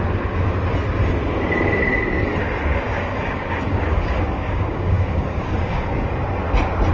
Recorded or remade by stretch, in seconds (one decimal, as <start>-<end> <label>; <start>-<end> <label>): 0.0-2.9 recorded; 2.9-6.1 remade; 6.1-6.9 recorded